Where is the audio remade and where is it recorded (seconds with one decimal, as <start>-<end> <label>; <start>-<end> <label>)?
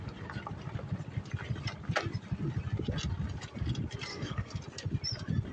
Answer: 0.0-4.1 recorded; 4.1-4.6 remade; 4.6-5.5 recorded